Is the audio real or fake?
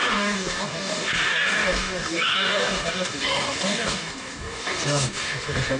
fake